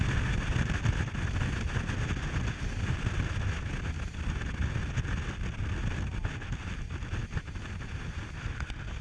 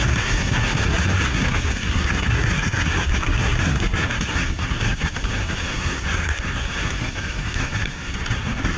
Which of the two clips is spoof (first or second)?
second